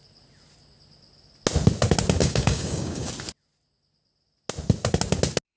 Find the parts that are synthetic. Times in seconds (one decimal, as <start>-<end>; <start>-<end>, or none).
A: 2.2-3.1